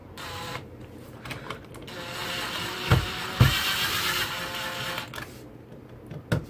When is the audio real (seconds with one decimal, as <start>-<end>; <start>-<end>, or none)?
1.7-2.2; 3.4-6.5